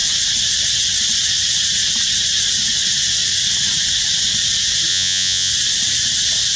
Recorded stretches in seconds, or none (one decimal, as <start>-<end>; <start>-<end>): 0.0-4.9; 5.5-6.6